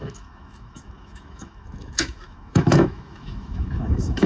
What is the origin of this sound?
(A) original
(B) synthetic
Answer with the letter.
B